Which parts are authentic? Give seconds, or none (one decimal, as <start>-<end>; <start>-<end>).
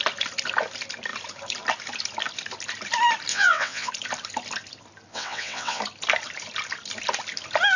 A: 0.0-3.3; 3.9-5.1; 5.8-7.8